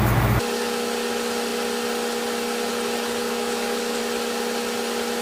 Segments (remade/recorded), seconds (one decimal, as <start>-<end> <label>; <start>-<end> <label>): 0.0-3.2 recorded; 3.2-4.0 remade; 4.0-5.2 recorded